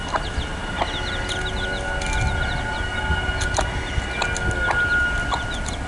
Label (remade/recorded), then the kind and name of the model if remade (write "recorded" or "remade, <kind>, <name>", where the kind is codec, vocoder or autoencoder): recorded